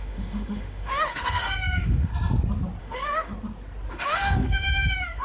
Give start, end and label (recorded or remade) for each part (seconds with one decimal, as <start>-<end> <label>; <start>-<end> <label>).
0.0-2.1 remade; 2.1-2.8 recorded; 2.8-3.3 remade; 3.3-3.9 recorded; 3.9-5.2 remade